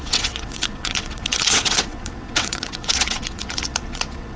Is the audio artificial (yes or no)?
yes